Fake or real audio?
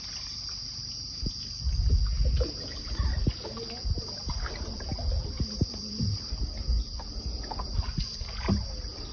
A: real